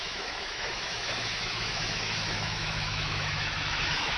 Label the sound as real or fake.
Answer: fake